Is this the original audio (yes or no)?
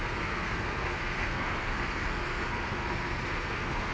no